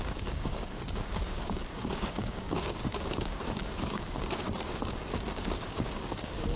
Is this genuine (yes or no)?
no